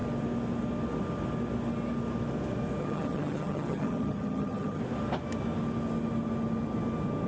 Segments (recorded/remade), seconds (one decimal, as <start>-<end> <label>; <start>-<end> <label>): 0.0-2.8 recorded; 2.8-4.8 remade; 4.8-7.3 recorded

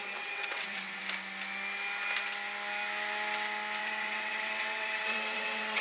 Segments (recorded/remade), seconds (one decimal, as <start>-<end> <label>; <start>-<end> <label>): 0.0-1.0 remade; 1.0-3.8 recorded; 3.8-5.8 remade

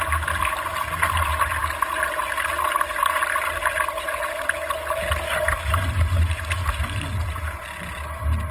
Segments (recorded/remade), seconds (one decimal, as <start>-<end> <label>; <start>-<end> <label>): 0.0-8.5 recorded

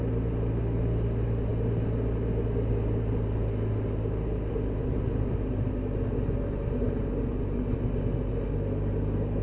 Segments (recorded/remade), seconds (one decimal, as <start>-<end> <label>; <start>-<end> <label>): 0.0-9.4 recorded

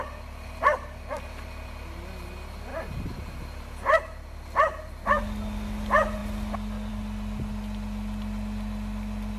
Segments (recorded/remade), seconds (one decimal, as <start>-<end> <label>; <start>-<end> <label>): 0.0-9.4 recorded

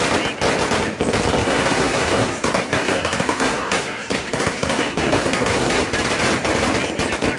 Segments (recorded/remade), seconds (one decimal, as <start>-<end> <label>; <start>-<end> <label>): 0.0-1.4 recorded; 1.4-5.8 remade; 5.8-7.4 recorded

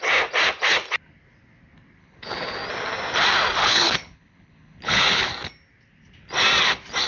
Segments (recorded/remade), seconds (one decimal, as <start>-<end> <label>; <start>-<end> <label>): 0.0-2.0 recorded; 2.0-2.6 remade; 2.6-3.6 recorded; 3.6-5.3 remade; 5.3-7.1 recorded